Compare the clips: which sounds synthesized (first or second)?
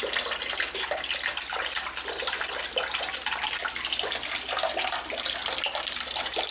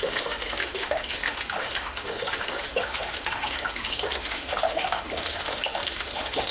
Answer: second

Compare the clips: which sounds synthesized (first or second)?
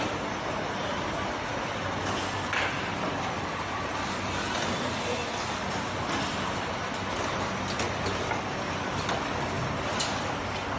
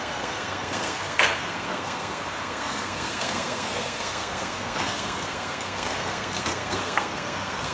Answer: second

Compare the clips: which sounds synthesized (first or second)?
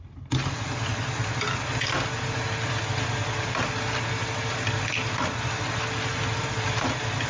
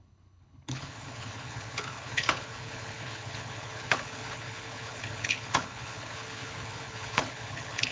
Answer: second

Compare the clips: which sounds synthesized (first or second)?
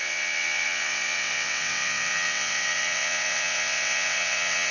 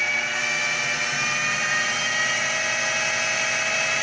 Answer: first